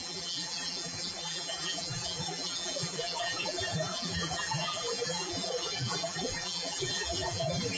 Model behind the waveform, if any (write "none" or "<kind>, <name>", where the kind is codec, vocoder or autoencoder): vocoder, BigVGAN v2